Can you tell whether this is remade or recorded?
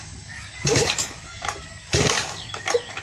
remade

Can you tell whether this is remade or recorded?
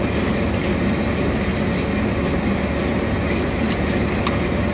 recorded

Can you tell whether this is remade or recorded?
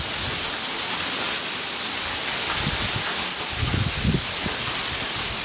recorded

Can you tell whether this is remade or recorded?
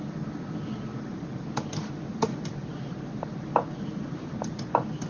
recorded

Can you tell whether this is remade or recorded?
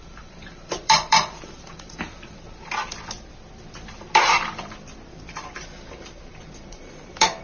remade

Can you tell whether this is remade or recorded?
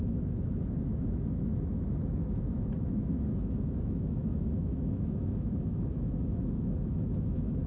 remade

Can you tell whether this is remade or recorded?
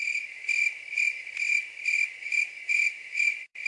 remade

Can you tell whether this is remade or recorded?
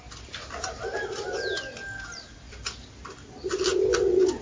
recorded